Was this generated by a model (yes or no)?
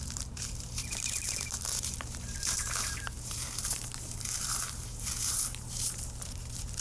yes